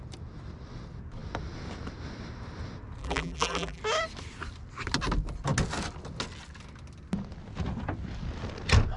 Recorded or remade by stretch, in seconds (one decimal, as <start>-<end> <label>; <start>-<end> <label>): 0.0-3.0 recorded; 3.0-3.8 remade; 3.8-9.0 recorded